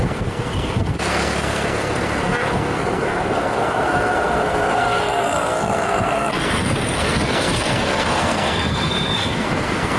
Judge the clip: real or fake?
fake